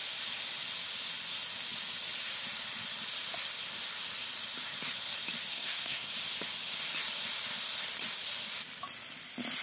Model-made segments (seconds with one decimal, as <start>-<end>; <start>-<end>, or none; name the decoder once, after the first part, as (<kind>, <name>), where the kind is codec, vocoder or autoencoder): 5.5-6.1 (codec, SNAC)